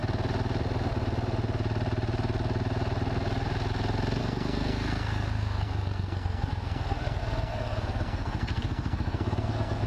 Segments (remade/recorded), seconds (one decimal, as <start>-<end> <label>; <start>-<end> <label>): 0.0-4.2 recorded; 4.2-9.9 remade